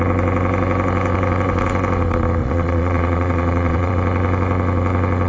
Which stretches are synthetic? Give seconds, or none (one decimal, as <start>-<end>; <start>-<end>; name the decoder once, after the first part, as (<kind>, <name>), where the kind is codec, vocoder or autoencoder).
2.4-3.9 (vocoder, Vocos)